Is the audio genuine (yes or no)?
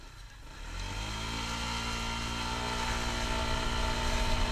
yes